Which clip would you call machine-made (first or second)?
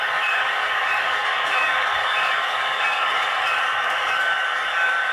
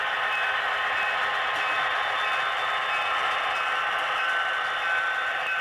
first